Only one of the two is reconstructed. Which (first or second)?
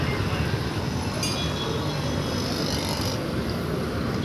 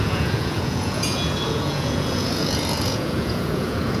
second